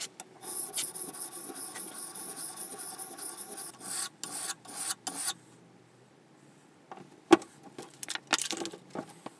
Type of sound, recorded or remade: recorded